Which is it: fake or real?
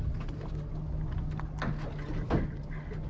real